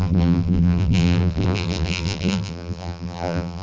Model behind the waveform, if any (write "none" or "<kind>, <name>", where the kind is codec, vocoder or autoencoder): vocoder, BigVGAN v2